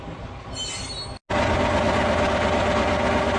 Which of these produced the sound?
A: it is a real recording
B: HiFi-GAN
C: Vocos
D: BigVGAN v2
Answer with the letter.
A